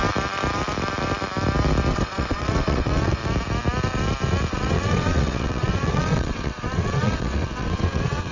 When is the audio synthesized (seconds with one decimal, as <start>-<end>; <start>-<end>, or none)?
1.9-3.2; 4.5-8.3